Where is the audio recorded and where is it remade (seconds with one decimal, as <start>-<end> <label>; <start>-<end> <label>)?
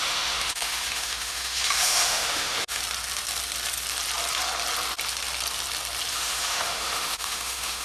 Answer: 0.0-2.8 remade; 2.8-6.1 recorded; 6.1-7.8 remade